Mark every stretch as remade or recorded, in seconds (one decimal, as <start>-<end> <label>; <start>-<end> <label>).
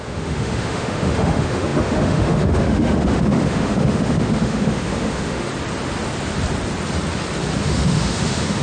0.0-5.5 remade; 5.5-7.6 recorded; 7.6-8.6 remade